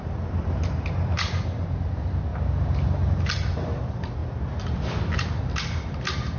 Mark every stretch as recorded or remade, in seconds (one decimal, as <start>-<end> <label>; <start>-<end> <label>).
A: 0.0-6.4 recorded